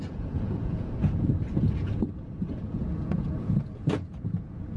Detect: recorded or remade remade